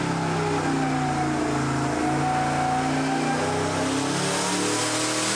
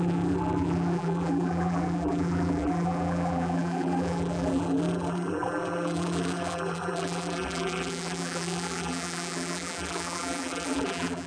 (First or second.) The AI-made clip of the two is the second